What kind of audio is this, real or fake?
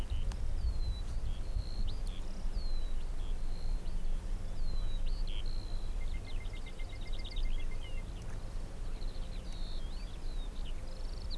real